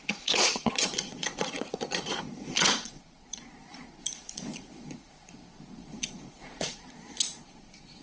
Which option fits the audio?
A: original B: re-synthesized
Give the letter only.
B